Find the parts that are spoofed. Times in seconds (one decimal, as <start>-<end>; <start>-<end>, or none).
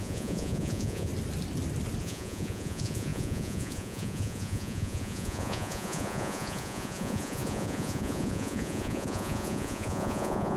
0.0-1.1; 2.0-10.6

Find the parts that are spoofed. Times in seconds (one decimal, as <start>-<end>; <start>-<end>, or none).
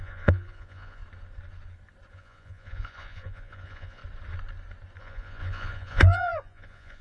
0.0-1.0; 2.1-4.0; 5.0-7.0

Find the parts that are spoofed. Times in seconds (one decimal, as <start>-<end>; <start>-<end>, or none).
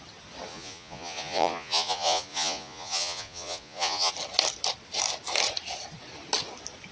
0.5-4.1